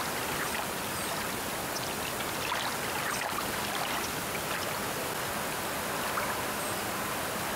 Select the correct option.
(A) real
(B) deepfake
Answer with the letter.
A